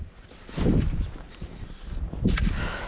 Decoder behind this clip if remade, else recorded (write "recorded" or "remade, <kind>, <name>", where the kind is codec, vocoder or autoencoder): recorded